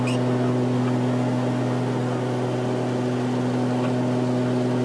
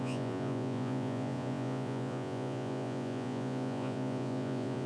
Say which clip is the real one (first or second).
first